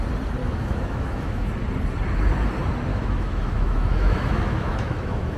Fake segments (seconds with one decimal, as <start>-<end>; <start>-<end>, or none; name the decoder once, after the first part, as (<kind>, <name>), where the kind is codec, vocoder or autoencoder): 0.4-1.5 (autoencoder, DAC-VAE); 2.9-5.4